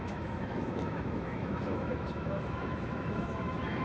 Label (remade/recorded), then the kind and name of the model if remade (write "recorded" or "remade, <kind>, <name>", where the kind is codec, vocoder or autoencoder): remade, autoencoder, DAC-VAE